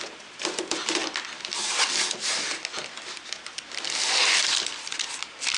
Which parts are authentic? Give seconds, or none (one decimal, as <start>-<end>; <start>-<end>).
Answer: 1.0-4.4